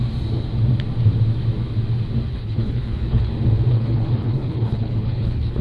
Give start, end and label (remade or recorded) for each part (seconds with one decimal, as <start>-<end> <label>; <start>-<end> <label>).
0.0-2.3 recorded; 2.3-3.3 remade; 3.3-3.7 recorded; 3.7-5.6 remade

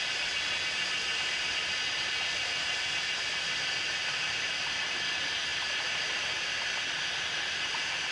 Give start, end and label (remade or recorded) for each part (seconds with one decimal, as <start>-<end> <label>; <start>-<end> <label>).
0.0-8.1 recorded

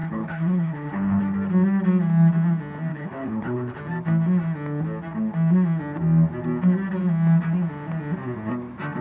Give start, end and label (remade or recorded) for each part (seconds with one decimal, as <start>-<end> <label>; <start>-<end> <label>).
0.0-1.2 remade; 1.2-2.9 recorded; 2.9-3.8 remade; 3.8-9.0 recorded

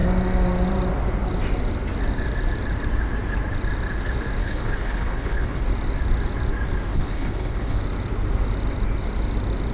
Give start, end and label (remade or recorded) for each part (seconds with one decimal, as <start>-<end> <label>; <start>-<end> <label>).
0.0-4.4 recorded; 4.4-5.6 remade; 5.6-6.9 recorded; 6.9-7.8 remade; 7.8-9.7 recorded

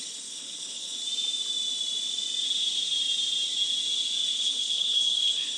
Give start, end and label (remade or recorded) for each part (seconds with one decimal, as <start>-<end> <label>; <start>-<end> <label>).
0.0-1.0 remade; 1.0-4.3 recorded; 4.3-5.6 remade

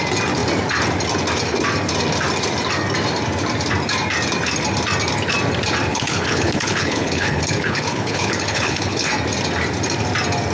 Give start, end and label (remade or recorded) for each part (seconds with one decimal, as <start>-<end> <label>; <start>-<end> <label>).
0.0-5.9 recorded; 5.9-9.1 remade; 9.1-10.5 recorded

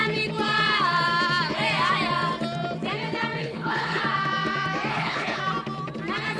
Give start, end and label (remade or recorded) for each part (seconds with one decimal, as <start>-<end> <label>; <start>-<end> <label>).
0.0-3.4 recorded; 3.4-4.0 remade; 4.0-4.9 recorded; 4.9-5.4 remade; 5.4-6.4 recorded

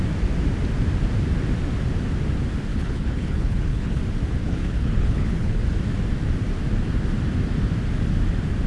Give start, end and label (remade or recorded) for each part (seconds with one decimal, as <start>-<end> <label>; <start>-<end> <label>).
0.0-2.7 recorded; 2.7-4.0 remade; 4.0-4.4 recorded; 4.4-5.6 remade; 5.6-8.7 recorded